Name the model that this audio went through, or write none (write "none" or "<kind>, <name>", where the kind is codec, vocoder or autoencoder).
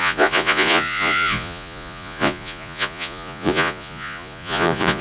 vocoder, Vocos